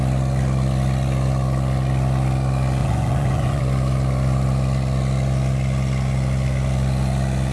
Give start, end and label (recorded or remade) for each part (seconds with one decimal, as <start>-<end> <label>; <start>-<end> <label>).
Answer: 0.0-2.8 recorded; 2.8-3.6 remade; 3.6-7.5 recorded